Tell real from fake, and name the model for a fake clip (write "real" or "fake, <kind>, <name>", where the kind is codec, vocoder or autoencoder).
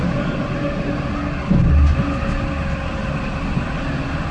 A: real